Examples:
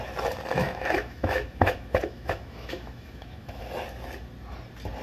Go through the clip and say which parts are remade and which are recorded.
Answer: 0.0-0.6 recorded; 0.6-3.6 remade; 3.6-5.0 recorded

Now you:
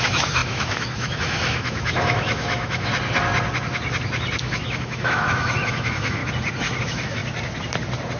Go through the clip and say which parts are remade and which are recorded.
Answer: 0.0-2.9 remade; 2.9-4.4 recorded; 4.4-6.2 remade; 6.2-6.8 recorded; 6.8-7.2 remade; 7.2-8.2 recorded

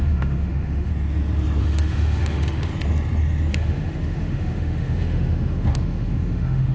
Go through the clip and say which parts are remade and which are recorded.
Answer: 0.0-0.9 remade; 0.9-1.6 recorded; 1.6-2.7 remade; 2.7-3.5 recorded; 3.5-6.7 remade

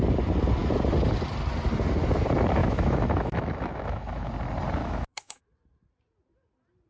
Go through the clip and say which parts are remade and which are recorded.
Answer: 0.0-2.6 recorded; 2.6-4.3 remade; 4.3-4.8 recorded; 4.8-5.4 remade; 5.4-6.9 recorded

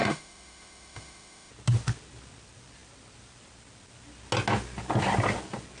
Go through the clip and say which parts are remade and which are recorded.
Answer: 0.0-1.5 remade; 1.5-5.8 recorded

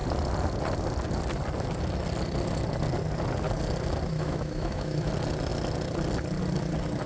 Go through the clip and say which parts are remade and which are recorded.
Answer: 0.0-4.1 recorded; 4.1-5.1 remade; 5.1-7.1 recorded